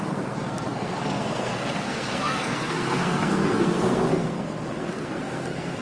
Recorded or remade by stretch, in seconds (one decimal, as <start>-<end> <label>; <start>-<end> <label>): 0.0-5.8 remade